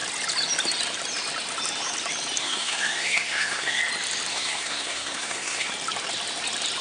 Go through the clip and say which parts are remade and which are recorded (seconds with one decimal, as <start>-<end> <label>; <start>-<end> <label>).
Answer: 0.0-2.4 recorded; 2.4-3.8 remade; 3.8-4.3 recorded; 4.3-5.7 remade; 5.7-6.8 recorded